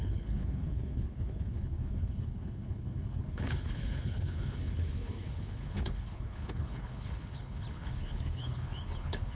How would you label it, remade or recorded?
remade